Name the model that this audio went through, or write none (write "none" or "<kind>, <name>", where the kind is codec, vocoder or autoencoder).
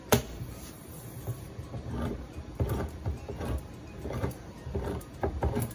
vocoder, BigVGAN v2